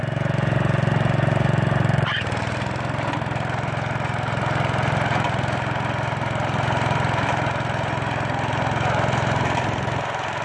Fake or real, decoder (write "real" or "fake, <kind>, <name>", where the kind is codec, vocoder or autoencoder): real